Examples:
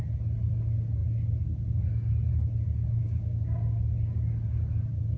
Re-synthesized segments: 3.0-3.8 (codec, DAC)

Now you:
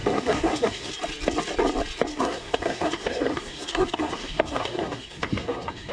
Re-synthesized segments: 0.0-0.9 (codec, SNAC); 2.1-5.9

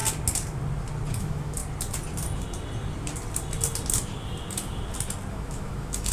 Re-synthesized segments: 1.2-1.6 (autoencoder, DAC-VAE); 5.3-6.1

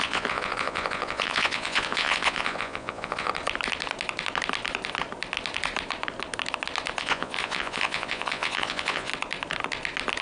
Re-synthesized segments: 0.0-3.3 (vocoder, Vocos); 7.0-9.1

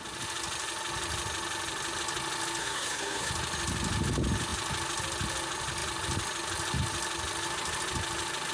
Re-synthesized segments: 2.6-3.3 (codec, SNAC)

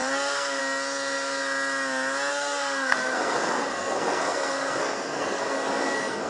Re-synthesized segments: 0.0-0.6 (codec, SNAC); 2.3-6.3